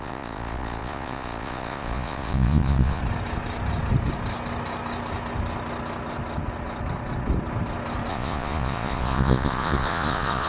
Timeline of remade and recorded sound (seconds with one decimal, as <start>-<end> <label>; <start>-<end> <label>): 0.0-3.0 remade; 3.0-8.1 recorded; 8.1-10.5 remade